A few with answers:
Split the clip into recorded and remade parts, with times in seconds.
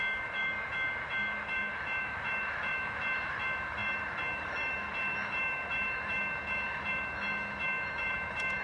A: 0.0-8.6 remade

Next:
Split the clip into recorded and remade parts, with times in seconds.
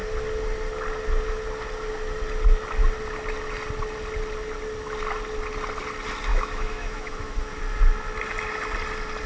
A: 0.0-6.3 recorded; 6.3-7.6 remade; 7.6-9.3 recorded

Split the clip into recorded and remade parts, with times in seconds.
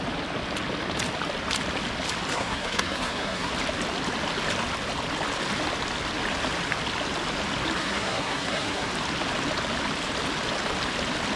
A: 0.0-2.3 recorded; 2.3-3.5 remade; 3.5-7.8 recorded; 7.8-8.9 remade; 8.9-11.4 recorded